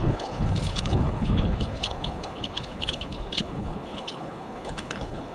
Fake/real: fake